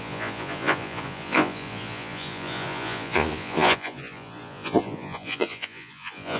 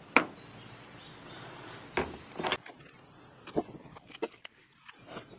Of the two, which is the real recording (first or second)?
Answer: second